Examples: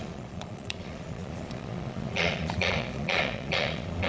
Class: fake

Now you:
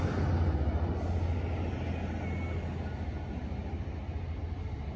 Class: real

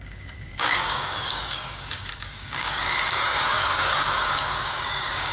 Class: fake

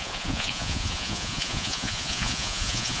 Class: fake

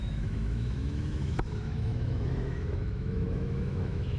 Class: fake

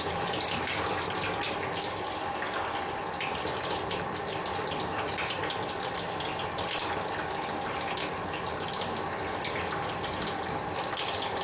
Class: real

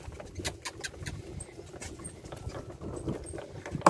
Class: real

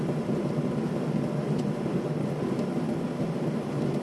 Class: real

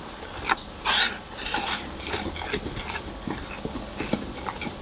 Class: real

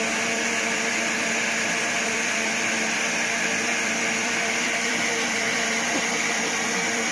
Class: fake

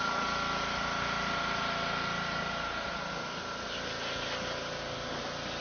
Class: real